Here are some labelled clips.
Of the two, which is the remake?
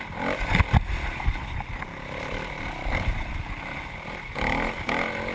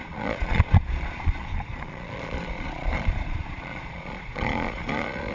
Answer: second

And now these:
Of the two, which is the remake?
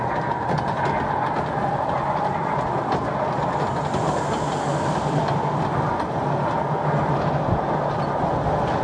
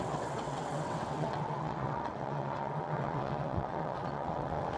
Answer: second